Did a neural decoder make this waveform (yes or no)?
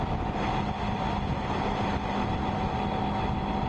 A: no